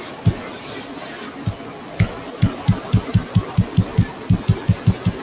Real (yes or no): yes